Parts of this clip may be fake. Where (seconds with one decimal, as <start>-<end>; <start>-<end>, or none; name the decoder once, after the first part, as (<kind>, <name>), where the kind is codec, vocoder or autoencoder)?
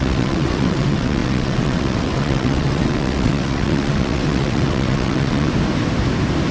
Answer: 0.0-5.5 (vocoder, WaveNeXt)